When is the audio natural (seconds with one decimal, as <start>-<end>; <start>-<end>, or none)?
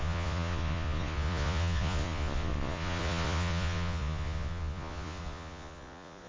none